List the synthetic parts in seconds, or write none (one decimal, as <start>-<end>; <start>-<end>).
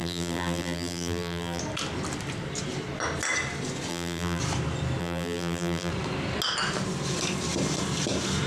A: 0.0-1.6; 3.9-4.4; 5.0-5.9